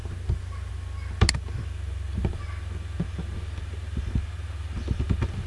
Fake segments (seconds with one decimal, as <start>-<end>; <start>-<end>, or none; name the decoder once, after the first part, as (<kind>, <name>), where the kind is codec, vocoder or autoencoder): none